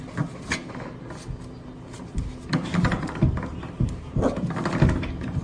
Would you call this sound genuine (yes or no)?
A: yes